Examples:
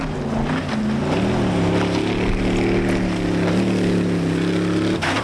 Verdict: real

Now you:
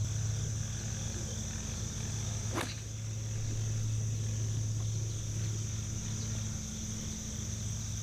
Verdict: real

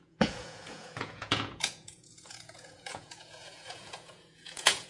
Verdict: fake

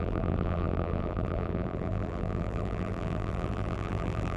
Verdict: fake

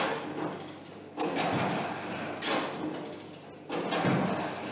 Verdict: real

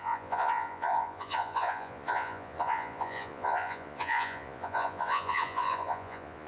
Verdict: fake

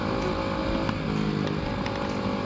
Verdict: real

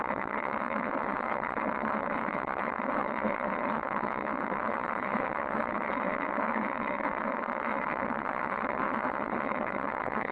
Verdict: fake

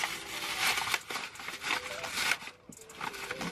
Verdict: real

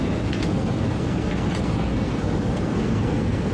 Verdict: fake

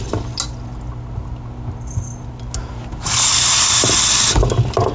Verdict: real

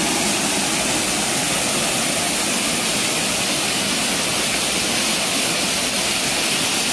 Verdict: real